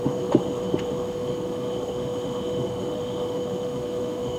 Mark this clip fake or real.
fake